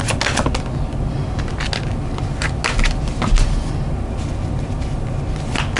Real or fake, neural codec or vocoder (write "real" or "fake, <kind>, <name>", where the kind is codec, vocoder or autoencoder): real